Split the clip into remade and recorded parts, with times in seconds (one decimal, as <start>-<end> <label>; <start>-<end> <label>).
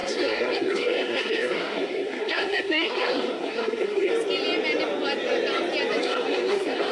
0.0-4.1 remade; 4.1-6.0 recorded; 6.0-6.9 remade